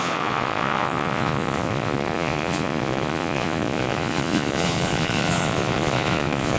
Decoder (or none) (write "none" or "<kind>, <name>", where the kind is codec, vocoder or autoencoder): vocoder, Vocos